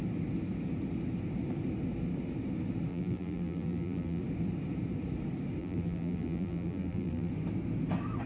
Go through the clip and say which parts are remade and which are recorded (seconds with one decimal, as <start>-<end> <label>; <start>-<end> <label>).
0.0-2.9 recorded; 2.9-4.2 remade; 4.2-5.6 recorded; 5.6-7.3 remade; 7.3-8.3 recorded